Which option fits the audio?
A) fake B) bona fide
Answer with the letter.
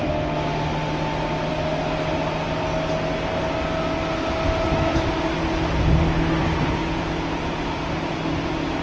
B